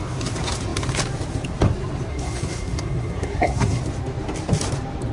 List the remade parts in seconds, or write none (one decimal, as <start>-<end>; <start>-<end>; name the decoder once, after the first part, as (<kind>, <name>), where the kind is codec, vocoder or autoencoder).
2.1-3.8 (codec, SNAC)